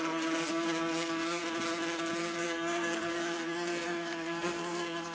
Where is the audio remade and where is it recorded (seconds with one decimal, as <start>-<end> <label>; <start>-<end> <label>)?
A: 0.0-1.4 remade; 1.4-2.2 recorded; 2.2-5.1 remade